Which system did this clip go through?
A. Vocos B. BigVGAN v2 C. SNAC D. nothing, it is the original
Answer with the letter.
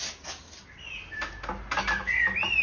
D